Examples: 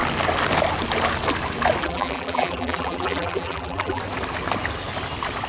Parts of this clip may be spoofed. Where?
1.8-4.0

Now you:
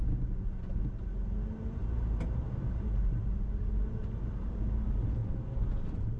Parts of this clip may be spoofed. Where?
1.8-4.7; 5.2-6.2

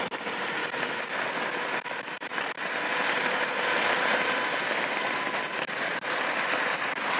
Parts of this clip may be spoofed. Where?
none

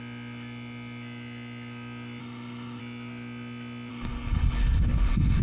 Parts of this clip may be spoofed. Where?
2.2-2.8; 3.9-5.4

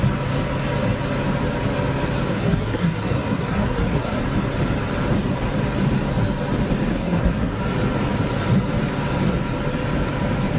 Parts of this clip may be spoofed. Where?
2.3-4.2; 6.9-7.6

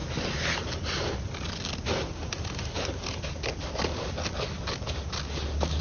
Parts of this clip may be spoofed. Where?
none